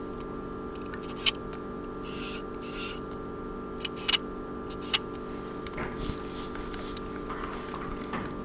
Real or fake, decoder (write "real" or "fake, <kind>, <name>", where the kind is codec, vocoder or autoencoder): real